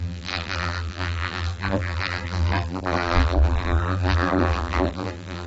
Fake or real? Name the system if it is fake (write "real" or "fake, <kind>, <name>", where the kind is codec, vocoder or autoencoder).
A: fake, vocoder, BigVGAN v2